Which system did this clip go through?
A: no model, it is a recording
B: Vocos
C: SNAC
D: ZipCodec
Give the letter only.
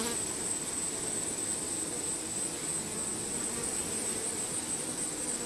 A